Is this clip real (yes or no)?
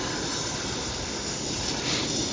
yes